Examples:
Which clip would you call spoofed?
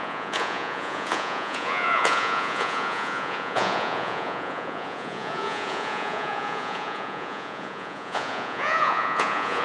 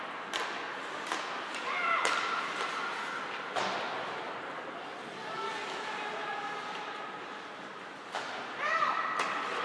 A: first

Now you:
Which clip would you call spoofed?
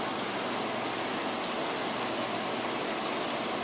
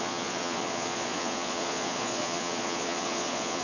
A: second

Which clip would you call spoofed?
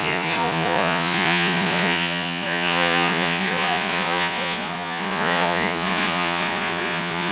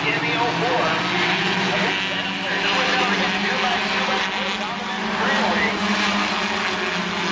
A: first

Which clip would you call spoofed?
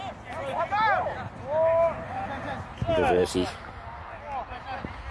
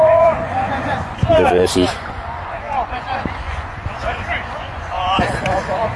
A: second